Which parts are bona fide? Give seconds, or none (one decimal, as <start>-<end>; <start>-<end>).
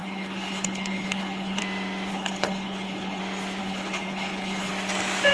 1.6-2.1; 3.2-3.6; 4.7-5.3